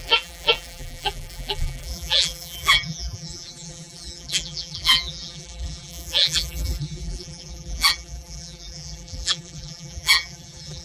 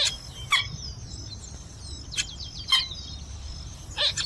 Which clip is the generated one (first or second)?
first